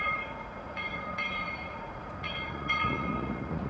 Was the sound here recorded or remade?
remade